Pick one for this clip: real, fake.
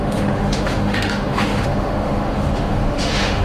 fake